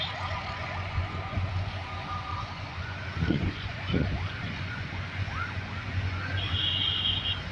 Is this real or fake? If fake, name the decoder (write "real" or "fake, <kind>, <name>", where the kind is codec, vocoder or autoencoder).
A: fake, vocoder, Vocos